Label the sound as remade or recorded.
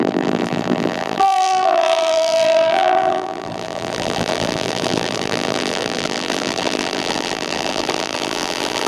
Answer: remade